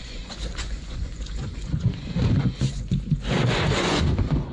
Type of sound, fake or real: fake